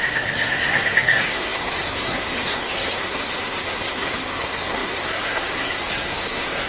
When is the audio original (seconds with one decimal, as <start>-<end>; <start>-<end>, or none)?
none